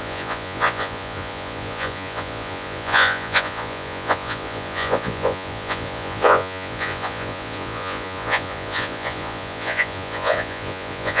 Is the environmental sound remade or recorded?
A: remade